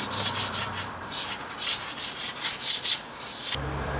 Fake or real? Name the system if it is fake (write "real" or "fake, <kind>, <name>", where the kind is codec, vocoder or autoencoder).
fake, vocoder, BigVGAN v2